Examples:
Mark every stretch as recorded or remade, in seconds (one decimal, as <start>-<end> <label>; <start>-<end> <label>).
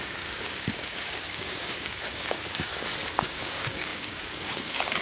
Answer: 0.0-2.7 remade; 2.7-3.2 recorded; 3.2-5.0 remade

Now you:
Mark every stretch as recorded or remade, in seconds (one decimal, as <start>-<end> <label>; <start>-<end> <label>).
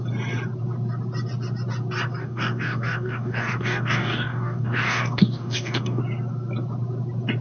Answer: 0.0-2.2 recorded; 2.2-6.0 remade; 6.0-7.4 recorded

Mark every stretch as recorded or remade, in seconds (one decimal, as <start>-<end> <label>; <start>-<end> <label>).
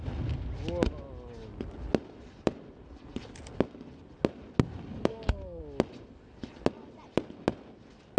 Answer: 0.0-4.9 recorded; 4.9-5.6 remade; 5.6-8.2 recorded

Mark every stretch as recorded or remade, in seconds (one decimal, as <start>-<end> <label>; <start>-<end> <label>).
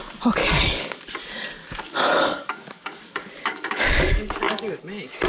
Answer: 0.0-0.4 recorded; 0.4-1.0 remade; 1.0-1.6 recorded; 1.6-4.8 remade; 4.8-5.3 recorded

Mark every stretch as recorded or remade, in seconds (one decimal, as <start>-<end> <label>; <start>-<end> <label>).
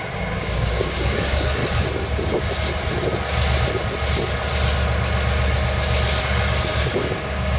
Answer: 0.0-1.6 remade; 1.6-6.2 recorded; 6.2-7.6 remade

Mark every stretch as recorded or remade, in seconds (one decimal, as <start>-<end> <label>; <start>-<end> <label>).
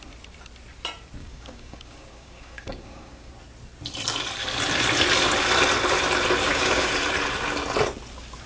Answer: 0.0-1.2 recorded; 1.2-3.3 remade; 3.3-6.4 recorded; 6.4-6.9 remade; 6.9-8.5 recorded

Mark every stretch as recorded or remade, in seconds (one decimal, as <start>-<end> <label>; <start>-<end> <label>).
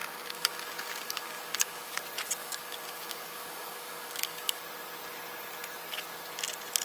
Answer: 0.0-1.9 remade; 1.9-2.4 recorded; 2.4-4.6 remade; 4.6-6.8 recorded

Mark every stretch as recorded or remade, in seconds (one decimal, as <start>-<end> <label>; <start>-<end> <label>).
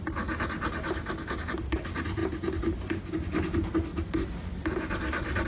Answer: 0.0-5.5 recorded